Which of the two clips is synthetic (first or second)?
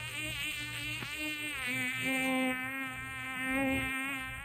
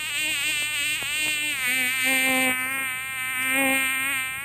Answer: first